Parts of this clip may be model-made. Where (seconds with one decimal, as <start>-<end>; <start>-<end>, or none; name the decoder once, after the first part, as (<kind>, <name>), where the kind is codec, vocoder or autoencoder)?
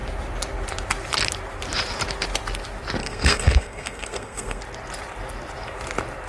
3.0-4.6 (codec, SNAC)